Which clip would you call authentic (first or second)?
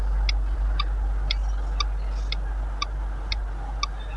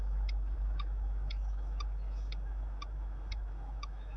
first